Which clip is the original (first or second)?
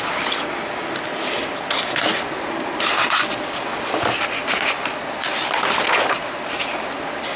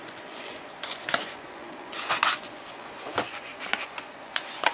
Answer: first